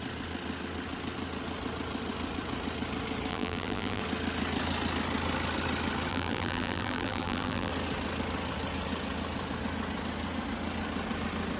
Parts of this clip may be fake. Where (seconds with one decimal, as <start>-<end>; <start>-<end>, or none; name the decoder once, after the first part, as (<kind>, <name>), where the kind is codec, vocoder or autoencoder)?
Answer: 3.3-4.0 (vocoder, BigVGAN v2); 6.1-7.7